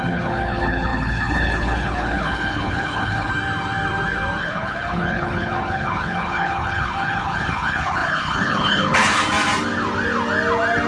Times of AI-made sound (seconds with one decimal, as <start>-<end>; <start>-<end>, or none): 0.0-3.3; 4.4-9.2